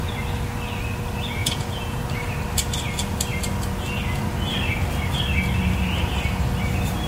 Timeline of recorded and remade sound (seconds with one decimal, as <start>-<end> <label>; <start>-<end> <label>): 0.0-1.4 recorded; 1.4-2.0 remade; 2.0-7.1 recorded